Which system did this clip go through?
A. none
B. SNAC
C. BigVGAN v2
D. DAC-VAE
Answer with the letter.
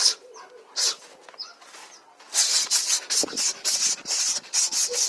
A